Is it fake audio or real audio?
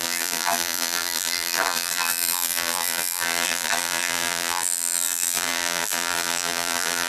fake